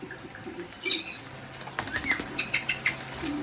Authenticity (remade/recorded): recorded